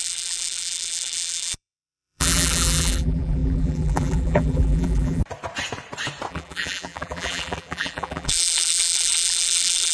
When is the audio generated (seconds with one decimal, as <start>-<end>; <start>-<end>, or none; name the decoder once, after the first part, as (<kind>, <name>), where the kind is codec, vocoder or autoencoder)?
0.0-5.2 (vocoder, BigVGAN v2); 6.3-9.9